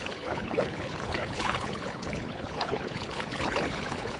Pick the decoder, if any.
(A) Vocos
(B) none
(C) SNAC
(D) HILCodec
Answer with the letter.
D